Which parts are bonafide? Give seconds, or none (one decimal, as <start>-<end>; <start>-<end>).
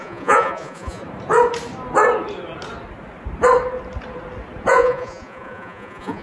1.0-4.7